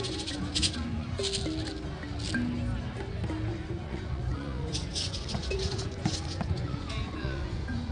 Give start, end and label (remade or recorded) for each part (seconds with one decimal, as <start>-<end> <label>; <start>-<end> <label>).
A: 0.0-1.2 remade; 1.2-3.7 recorded; 3.7-7.9 remade